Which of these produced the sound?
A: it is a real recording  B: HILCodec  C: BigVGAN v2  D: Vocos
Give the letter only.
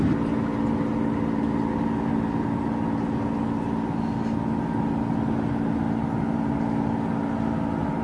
A